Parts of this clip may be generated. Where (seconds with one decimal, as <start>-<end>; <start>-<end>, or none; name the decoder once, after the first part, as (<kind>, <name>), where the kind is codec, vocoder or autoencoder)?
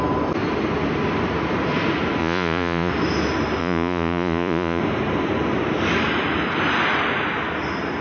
2.2-2.9 (vocoder, Vocos); 3.6-4.8